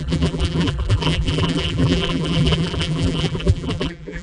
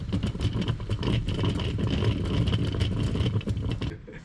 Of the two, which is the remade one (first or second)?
first